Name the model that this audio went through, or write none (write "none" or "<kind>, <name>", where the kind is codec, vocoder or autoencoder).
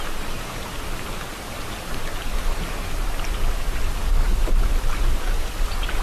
none